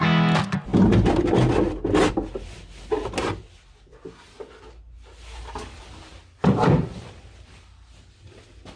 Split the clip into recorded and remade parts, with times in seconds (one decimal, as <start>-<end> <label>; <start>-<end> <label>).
0.0-8.8 recorded